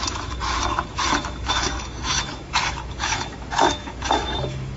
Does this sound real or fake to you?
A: fake